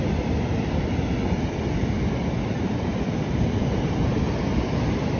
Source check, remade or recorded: recorded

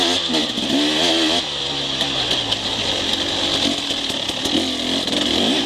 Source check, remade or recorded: recorded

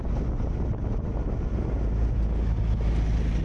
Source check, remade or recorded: recorded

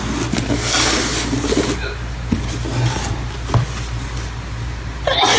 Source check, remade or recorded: recorded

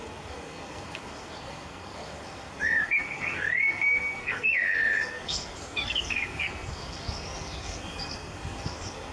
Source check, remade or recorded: remade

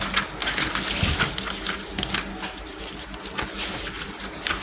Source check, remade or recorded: recorded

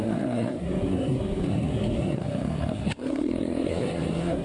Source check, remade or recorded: remade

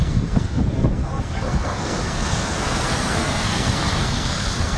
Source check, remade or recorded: remade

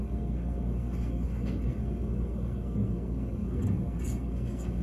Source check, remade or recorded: remade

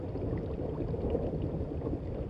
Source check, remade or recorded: recorded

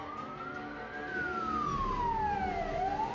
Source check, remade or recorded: recorded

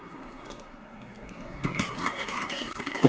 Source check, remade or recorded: remade